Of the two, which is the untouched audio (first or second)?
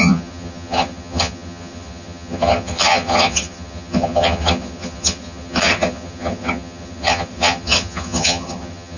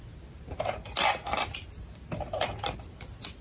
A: second